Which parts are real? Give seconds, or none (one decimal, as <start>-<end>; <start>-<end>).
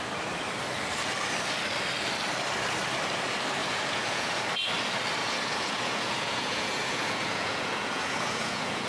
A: 0.0-3.6; 4.4-5.2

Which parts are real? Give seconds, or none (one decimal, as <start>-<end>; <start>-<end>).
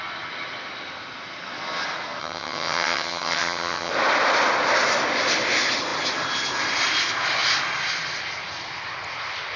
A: 0.0-2.2; 3.9-9.6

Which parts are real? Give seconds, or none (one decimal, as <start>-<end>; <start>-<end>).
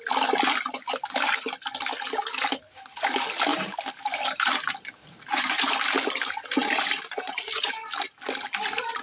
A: 0.0-3.5; 7.7-9.0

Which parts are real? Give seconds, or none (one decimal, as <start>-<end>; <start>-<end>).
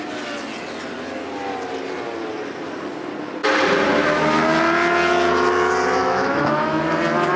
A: 0.0-6.0; 6.8-7.4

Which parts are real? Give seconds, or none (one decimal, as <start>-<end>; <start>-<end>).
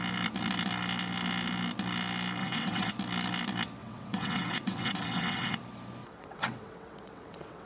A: 0.0-2.4; 2.9-3.8; 5.6-6.0